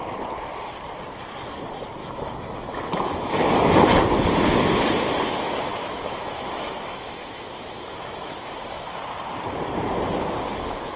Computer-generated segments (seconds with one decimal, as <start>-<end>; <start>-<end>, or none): 2.0-3.9; 5.8-9.0